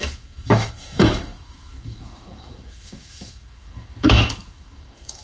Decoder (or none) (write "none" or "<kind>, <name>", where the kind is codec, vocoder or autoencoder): autoencoder, DAC-VAE